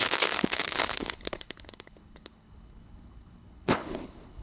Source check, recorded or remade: remade